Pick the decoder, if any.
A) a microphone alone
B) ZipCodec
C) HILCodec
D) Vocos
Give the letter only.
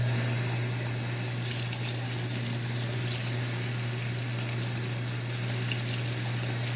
A